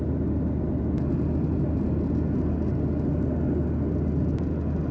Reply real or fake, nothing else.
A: real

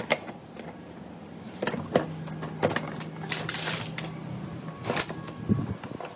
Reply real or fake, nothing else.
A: real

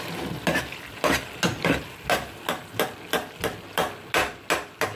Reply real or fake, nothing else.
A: real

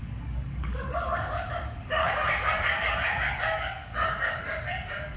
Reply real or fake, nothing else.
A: fake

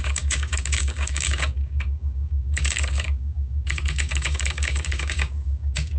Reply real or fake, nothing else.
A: fake